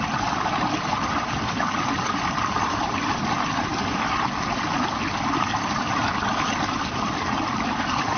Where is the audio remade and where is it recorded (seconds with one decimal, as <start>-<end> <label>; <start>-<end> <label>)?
0.0-8.2 recorded

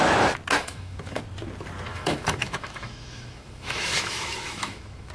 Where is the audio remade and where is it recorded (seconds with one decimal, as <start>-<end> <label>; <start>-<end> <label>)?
0.0-0.6 recorded; 0.6-1.2 remade; 1.2-1.9 recorded; 1.9-5.1 remade

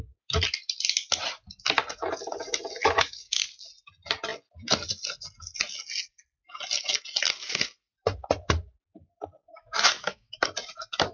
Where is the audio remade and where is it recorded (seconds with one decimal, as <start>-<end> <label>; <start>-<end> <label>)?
0.0-2.8 recorded; 2.8-3.4 remade; 3.4-9.5 recorded; 9.5-10.3 remade; 10.3-11.1 recorded

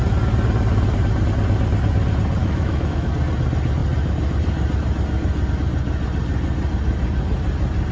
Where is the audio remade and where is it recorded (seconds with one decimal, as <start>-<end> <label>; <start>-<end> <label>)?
0.0-2.4 recorded; 2.4-3.1 remade; 3.1-7.9 recorded